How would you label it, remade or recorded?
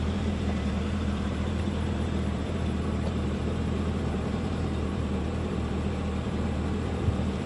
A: remade